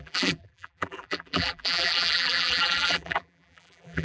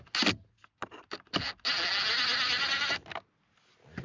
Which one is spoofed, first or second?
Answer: first